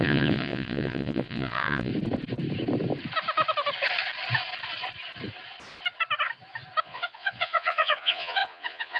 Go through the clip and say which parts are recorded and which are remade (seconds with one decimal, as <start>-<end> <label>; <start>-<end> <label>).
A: 0.0-1.9 remade; 1.9-6.8 recorded; 6.8-9.0 remade